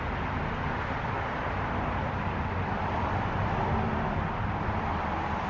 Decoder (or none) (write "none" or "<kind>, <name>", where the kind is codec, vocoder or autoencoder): none